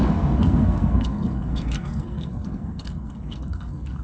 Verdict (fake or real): fake